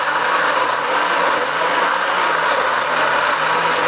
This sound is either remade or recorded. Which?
recorded